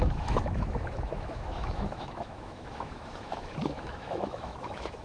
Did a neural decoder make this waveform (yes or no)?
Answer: yes